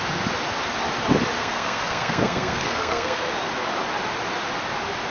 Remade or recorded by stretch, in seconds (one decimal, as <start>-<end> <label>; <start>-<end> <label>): 0.0-1.4 recorded; 1.4-3.3 remade; 3.3-5.1 recorded